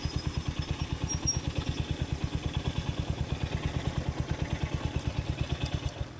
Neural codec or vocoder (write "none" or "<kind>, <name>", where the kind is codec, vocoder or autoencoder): none